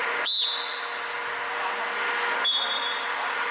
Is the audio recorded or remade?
recorded